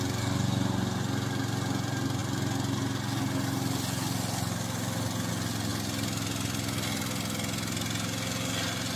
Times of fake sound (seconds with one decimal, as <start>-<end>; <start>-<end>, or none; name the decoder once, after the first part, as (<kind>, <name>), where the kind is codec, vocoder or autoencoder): none